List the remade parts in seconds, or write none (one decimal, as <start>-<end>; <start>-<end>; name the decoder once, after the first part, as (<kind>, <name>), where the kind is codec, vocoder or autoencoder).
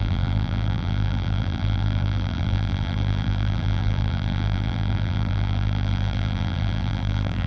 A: 0.0-7.5 (vocoder, BigVGAN v2)